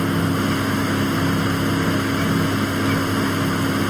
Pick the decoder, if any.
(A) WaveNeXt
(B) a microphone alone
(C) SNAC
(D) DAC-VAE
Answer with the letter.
B